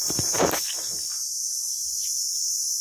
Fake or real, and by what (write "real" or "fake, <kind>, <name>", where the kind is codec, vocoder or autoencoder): real